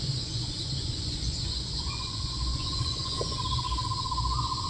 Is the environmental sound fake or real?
fake